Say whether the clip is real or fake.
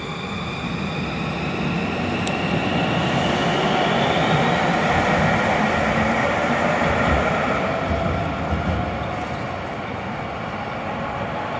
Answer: real